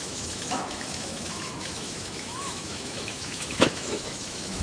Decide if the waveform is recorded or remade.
remade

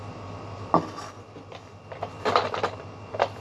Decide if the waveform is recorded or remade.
recorded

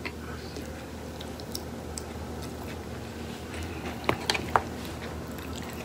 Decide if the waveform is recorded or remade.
recorded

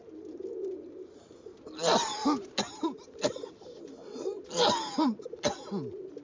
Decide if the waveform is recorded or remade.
recorded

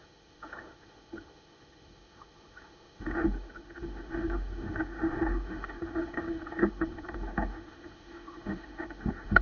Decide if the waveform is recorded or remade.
remade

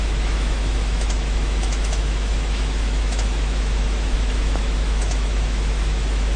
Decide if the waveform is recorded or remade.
remade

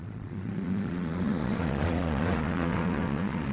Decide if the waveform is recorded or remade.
remade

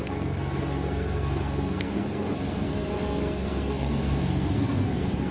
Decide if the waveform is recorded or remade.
remade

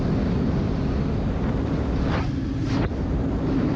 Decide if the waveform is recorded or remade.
recorded